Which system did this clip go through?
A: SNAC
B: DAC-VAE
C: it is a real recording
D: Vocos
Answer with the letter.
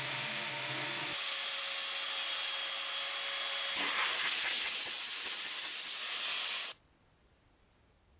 C